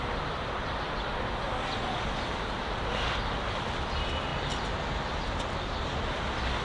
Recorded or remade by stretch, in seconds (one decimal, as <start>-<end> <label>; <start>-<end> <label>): 0.0-6.6 recorded